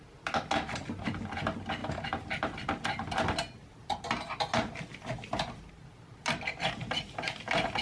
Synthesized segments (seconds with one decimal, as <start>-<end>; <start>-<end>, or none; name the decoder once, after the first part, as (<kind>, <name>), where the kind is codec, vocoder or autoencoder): none